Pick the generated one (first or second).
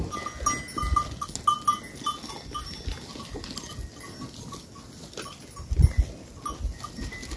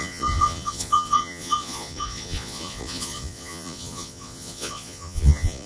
second